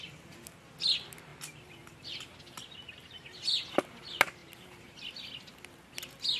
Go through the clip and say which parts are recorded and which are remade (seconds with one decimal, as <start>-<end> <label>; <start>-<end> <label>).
0.0-6.4 recorded

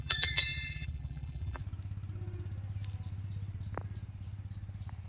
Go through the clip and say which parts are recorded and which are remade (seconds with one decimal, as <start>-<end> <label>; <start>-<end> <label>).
0.0-1.6 remade; 1.6-5.1 recorded